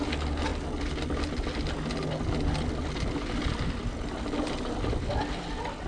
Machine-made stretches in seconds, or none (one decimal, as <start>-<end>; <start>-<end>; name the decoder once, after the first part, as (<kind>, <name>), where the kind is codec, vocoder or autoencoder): none